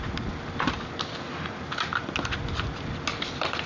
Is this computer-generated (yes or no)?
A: no